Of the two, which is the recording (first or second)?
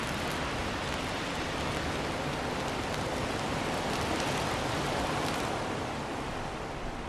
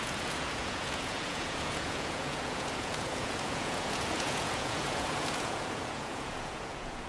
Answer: first